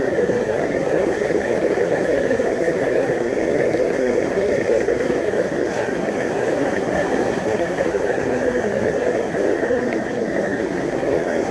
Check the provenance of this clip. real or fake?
fake